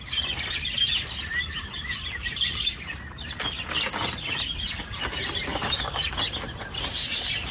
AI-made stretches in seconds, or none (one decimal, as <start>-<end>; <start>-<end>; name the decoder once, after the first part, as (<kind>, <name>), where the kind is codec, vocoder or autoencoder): 1.0-2.7 (vocoder, BigVGAN v2); 5.5-6.2